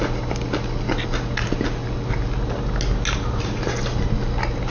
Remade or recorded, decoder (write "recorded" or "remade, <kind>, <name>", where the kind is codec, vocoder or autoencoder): recorded